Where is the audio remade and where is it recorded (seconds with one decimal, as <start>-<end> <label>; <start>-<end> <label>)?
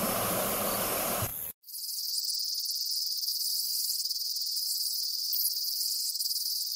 0.0-1.3 remade; 1.3-3.3 recorded; 3.3-5.3 remade; 5.3-6.0 recorded; 6.0-6.8 remade